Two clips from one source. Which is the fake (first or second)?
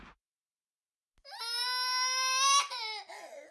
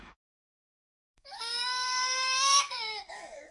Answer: second